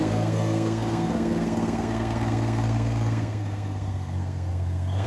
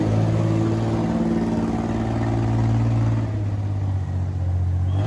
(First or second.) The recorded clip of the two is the second